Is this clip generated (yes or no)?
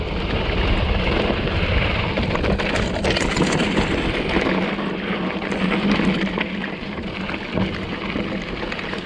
no